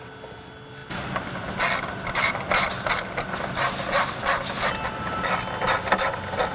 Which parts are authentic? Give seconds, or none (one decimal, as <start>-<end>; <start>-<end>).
0.0-6.5